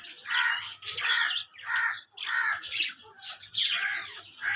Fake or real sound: real